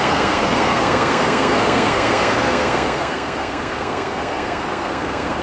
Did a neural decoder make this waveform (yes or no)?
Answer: yes